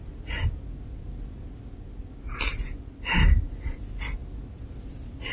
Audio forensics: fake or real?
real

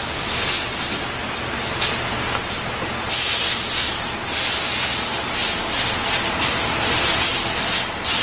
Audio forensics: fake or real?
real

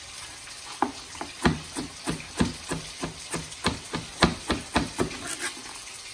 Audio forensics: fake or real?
real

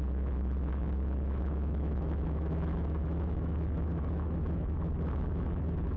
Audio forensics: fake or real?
fake